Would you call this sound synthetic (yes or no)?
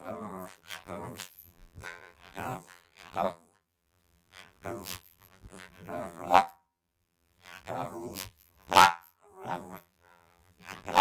yes